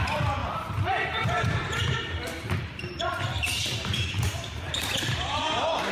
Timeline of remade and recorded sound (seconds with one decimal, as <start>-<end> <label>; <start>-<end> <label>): 0.0-0.4 recorded; 0.4-2.0 remade; 2.0-2.7 recorded; 2.7-5.3 remade; 5.3-5.9 recorded